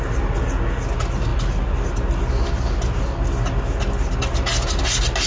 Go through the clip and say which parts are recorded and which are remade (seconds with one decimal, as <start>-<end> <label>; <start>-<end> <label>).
0.0-5.3 recorded